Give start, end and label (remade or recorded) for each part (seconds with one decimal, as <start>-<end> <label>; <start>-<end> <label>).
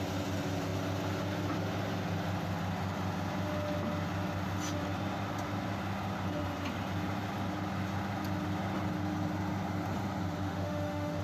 0.0-10.4 recorded; 10.4-11.2 remade